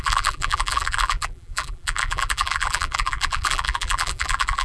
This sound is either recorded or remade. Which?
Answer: remade